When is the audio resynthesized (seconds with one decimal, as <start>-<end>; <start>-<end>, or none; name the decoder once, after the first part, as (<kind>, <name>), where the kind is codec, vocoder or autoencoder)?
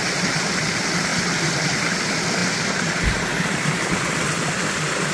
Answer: none